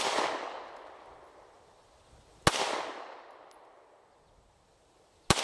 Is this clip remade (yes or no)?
no